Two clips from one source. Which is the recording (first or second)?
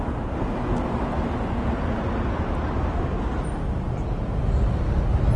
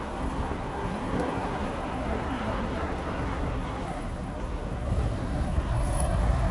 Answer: first